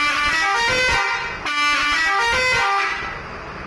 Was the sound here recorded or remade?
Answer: recorded